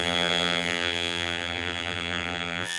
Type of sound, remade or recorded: remade